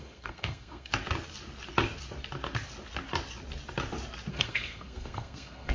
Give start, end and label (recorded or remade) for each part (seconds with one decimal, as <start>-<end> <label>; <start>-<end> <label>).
0.0-0.9 remade; 0.9-4.3 recorded; 4.3-5.7 remade